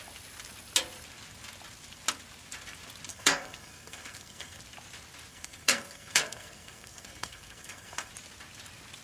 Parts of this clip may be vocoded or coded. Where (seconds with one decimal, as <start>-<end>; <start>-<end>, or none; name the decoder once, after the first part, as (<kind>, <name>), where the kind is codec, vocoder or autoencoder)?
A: 3.1-4.6 (codec, SNAC); 5.3-8.1